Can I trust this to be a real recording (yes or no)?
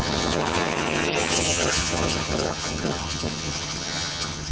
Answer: no